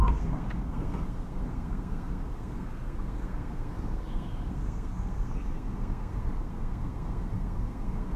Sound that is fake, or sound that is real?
fake